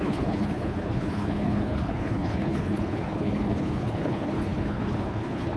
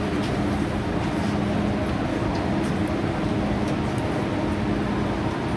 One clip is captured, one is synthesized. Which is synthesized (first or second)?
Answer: first